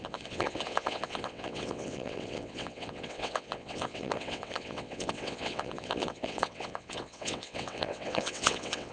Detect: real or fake fake